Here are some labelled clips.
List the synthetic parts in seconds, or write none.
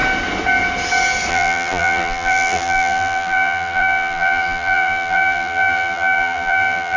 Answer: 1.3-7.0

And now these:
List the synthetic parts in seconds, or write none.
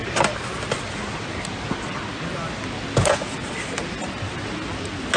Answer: none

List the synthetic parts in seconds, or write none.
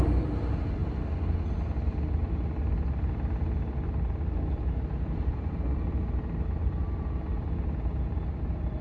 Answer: 0.0-0.8; 4.5-8.8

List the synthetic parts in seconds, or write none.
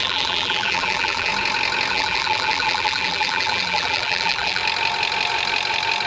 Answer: 0.0-1.3; 1.9-4.6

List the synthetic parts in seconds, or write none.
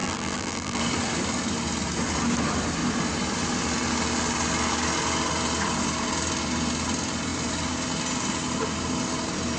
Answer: 0.0-0.8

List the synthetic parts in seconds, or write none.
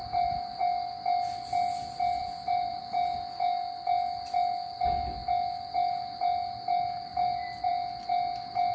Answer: 0.0-0.6; 2.2-2.8; 7.1-7.7